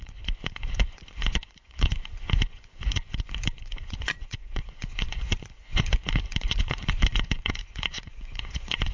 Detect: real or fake fake